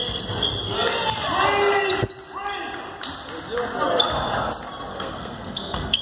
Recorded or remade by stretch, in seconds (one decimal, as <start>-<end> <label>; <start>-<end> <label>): 0.0-4.9 recorded; 4.9-6.0 remade